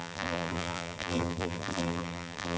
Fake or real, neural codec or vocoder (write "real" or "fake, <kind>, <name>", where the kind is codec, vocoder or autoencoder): fake, vocoder, BigVGAN v2